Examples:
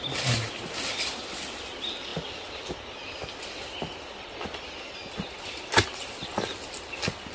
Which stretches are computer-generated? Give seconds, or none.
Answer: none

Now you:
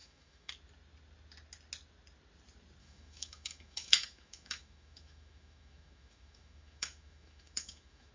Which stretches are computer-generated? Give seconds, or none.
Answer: 0.0-0.5 (autoencoder, DAC-VAE); 2.8-8.1

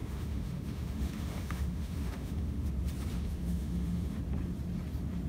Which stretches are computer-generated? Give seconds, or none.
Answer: 0.0-2.7 (autoencoder, DAC-VAE); 3.1-4.2

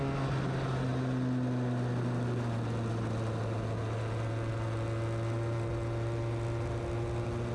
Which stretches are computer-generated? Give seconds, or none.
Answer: none

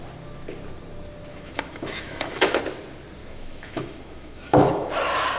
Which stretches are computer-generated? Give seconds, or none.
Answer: 1.3-2.6 (autoencoder, DAC-VAE); 3.2-4.9

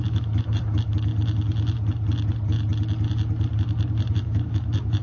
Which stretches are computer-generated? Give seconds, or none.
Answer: 0.0-1.1 (autoencoder, DAC-VAE); 4.1-5.0

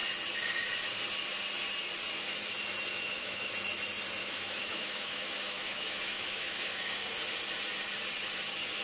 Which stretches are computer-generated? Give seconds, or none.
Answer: 2.9-3.5 (autoencoder, DAC-VAE); 4.2-7.1

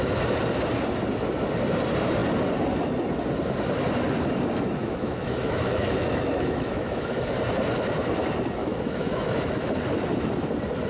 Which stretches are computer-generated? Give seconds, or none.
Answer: 4.8-7.1 (autoencoder, DAC-VAE); 8.6-9.3